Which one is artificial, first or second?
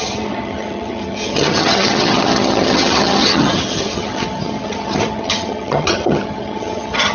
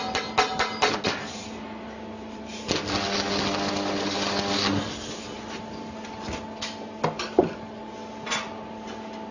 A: first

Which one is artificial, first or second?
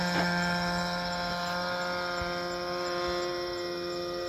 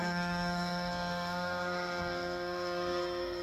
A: second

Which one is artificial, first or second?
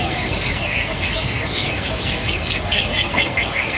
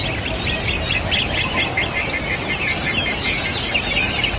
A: first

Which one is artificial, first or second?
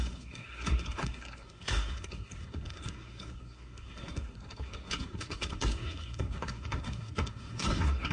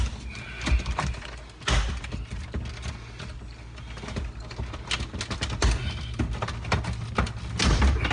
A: first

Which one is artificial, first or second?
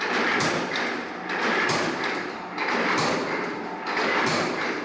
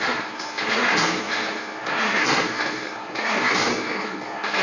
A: second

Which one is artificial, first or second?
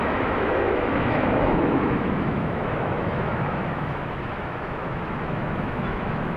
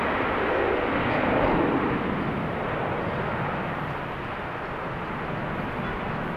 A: first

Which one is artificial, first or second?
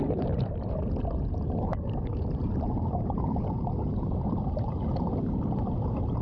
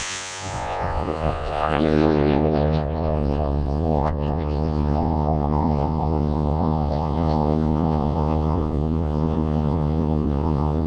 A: second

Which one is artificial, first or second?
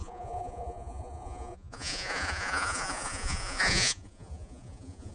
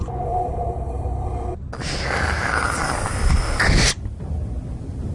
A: first